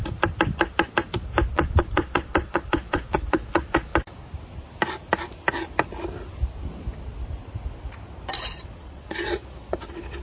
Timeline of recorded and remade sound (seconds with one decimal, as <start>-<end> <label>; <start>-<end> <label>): 0.0-1.5 recorded; 1.5-3.9 remade; 3.9-8.4 recorded; 8.4-10.2 remade